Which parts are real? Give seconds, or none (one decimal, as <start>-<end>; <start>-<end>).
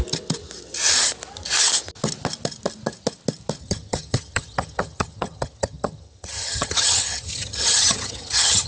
0.0-3.6